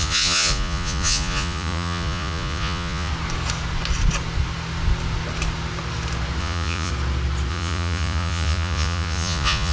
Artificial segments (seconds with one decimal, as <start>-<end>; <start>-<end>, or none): 0.0-3.1; 6.4-6.9; 7.5-9.7